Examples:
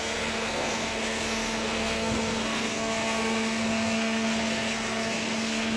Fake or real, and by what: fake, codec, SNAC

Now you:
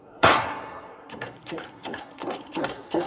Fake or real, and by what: fake, codec, SNAC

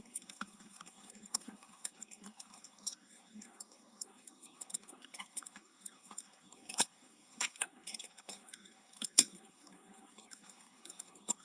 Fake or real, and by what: fake, codec, SNAC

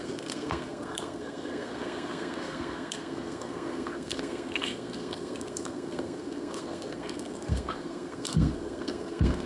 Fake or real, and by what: fake, codec, SNAC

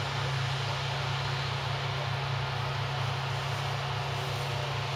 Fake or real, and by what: real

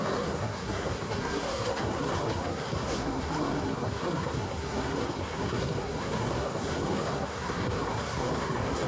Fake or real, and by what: fake, codec, SNAC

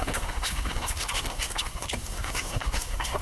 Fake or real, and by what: fake, codec, SNAC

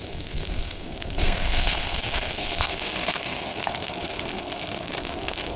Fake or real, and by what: fake, codec, SNAC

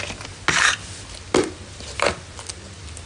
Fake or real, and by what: real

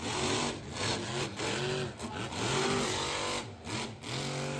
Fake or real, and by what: real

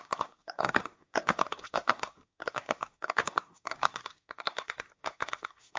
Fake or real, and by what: fake, codec, SNAC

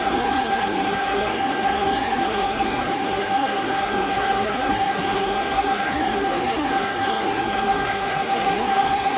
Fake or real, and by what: fake, codec, SNAC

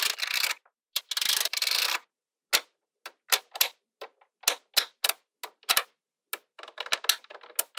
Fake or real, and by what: real